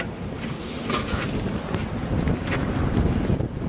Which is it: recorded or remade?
recorded